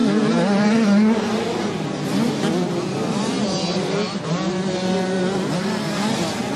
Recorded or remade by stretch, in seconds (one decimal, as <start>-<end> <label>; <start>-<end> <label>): 0.0-6.6 recorded